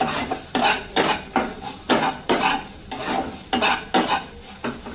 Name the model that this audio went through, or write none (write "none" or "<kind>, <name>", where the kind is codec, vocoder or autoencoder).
none